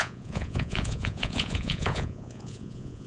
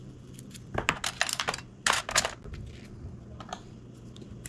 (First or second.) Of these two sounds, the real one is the second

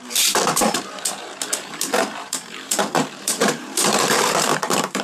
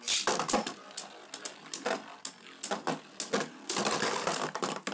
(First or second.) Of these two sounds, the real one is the second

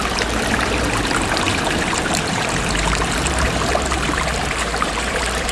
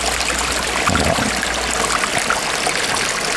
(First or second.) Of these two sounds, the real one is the second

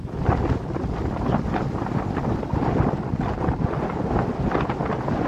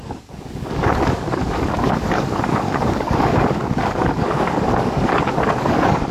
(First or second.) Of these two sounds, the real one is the first